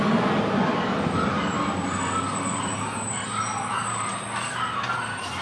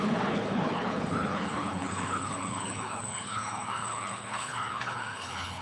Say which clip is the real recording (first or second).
first